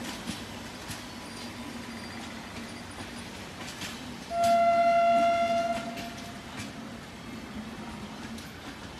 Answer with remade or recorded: recorded